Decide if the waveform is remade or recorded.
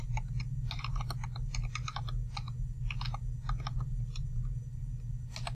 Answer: recorded